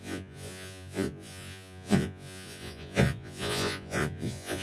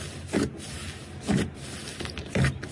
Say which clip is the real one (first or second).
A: second